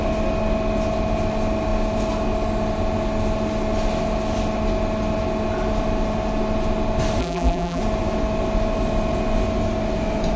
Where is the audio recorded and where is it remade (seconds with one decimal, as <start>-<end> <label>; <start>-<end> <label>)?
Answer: 0.0-7.2 recorded; 7.2-7.8 remade; 7.8-10.4 recorded